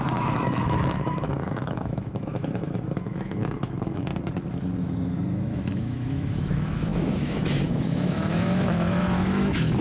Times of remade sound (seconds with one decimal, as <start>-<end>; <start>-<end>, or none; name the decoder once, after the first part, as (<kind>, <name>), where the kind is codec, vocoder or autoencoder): 0.0-4.1 (autoencoder, DAC-VAE); 4.8-9.8

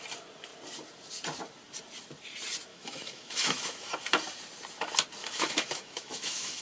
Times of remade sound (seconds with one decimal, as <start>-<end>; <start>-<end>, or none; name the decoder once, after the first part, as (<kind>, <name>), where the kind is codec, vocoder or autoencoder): 2.7-3.9 (autoencoder, DAC-VAE); 5.2-6.6